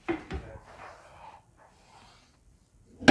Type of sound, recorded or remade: recorded